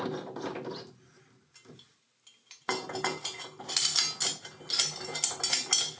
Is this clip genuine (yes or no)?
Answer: yes